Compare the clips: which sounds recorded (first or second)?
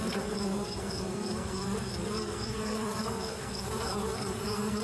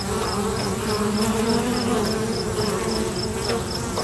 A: second